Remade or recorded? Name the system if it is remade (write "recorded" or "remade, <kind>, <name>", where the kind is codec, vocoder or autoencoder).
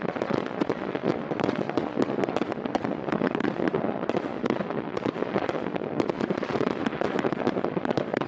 remade, vocoder, Vocos